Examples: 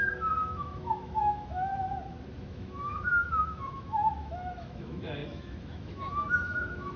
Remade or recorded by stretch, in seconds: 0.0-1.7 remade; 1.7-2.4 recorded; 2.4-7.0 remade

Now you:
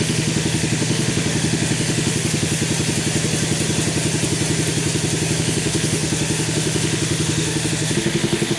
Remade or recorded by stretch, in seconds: 0.0-2.6 remade; 2.6-5.4 recorded; 5.4-8.6 remade

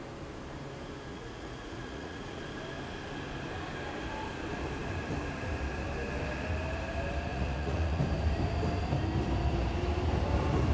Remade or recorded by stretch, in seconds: 0.0-1.1 recorded; 1.1-2.4 remade; 2.4-7.3 recorded; 7.3-8.0 remade; 8.0-10.7 recorded

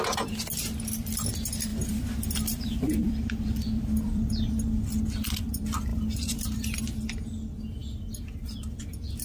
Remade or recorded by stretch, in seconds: 0.0-1.7 recorded; 1.7-4.5 remade; 4.5-5.9 recorded; 5.9-6.8 remade; 6.8-7.8 recorded; 7.8-8.5 remade; 8.5-9.2 recorded

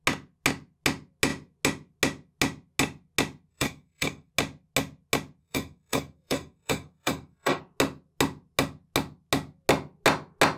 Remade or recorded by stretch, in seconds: 0.0-3.5 recorded; 3.5-4.3 remade; 4.3-5.4 recorded; 5.4-7.6 remade; 7.6-10.6 recorded

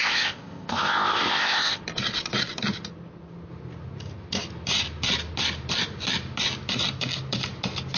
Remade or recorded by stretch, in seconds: 0.0-1.8 remade; 1.8-8.0 recorded